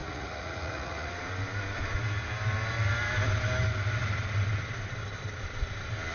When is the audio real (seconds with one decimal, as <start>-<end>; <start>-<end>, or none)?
1.1-6.1